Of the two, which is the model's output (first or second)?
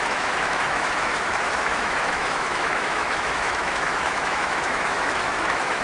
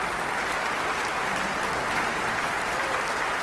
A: first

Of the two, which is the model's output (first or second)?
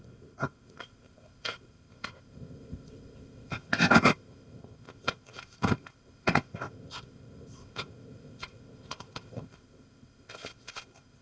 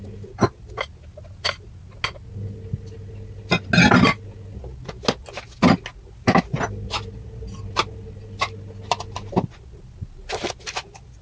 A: first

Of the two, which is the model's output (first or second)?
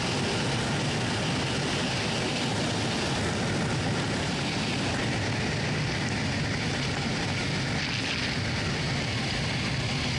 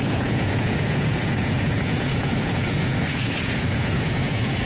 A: second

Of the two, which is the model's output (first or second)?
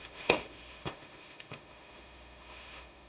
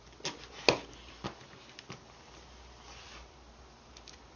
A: first